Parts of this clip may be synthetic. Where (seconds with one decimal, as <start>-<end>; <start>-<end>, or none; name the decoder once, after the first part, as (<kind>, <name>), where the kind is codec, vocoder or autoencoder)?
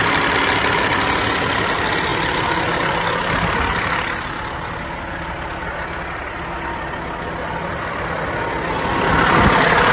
none